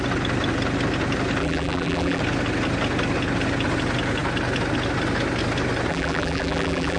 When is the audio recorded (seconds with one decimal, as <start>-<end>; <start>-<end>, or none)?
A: 0.0-1.4; 2.2-5.9